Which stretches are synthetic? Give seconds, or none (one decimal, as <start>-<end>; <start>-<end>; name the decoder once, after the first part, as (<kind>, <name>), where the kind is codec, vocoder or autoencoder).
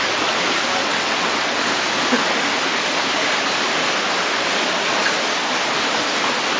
0.8-1.7 (vocoder, WaveNeXt)